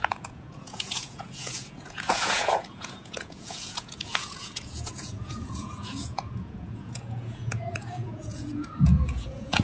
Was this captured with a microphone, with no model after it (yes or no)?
no